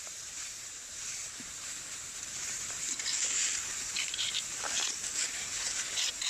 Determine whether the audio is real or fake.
fake